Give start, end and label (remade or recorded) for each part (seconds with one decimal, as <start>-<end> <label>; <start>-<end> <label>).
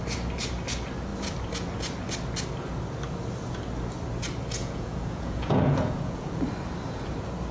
0.0-4.6 recorded; 4.6-6.4 remade; 6.4-7.5 recorded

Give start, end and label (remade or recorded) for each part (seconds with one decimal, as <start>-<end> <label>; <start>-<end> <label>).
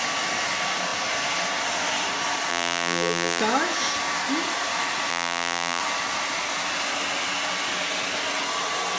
0.0-2.5 recorded; 2.5-3.4 remade; 3.4-5.1 recorded; 5.1-5.8 remade; 5.8-9.0 recorded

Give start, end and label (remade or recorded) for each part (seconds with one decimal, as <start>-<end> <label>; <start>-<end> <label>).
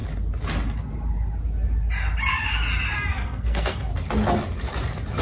0.0-3.1 recorded; 3.1-3.9 remade; 3.9-5.2 recorded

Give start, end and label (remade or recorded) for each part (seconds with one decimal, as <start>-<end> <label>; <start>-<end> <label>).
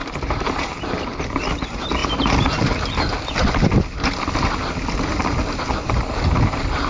0.0-0.7 remade; 0.7-6.9 recorded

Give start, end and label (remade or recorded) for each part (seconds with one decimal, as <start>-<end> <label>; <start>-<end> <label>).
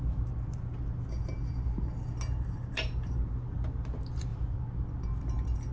0.0-5.7 recorded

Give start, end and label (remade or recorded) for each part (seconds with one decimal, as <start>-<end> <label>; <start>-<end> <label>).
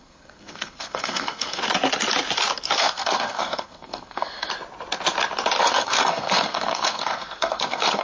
0.0-1.6 remade; 1.6-2.8 recorded; 2.8-4.5 remade; 4.5-5.6 recorded; 5.6-8.0 remade